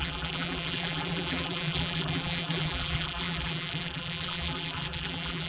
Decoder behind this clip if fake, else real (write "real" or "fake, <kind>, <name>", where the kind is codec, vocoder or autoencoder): fake, vocoder, BigVGAN v2